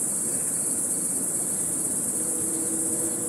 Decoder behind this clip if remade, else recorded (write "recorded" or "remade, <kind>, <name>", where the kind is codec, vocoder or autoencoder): recorded